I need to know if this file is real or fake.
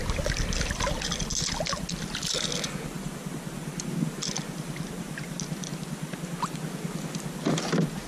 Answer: real